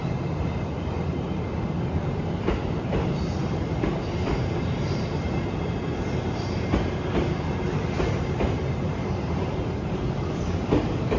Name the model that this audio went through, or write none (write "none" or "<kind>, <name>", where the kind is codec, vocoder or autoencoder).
vocoder, BigVGAN v2